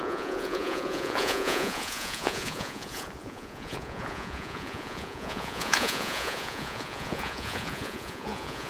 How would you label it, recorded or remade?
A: remade